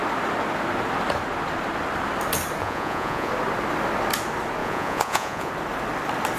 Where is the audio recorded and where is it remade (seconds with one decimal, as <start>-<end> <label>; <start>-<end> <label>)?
0.0-2.6 recorded; 2.6-3.3 remade; 3.3-4.6 recorded; 4.6-5.5 remade; 5.5-6.4 recorded